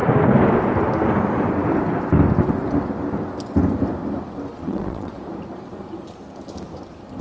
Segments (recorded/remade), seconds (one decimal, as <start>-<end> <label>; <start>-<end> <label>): 0.0-4.5 recorded; 4.5-5.1 remade; 5.1-7.2 recorded